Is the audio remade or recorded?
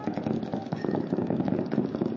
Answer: remade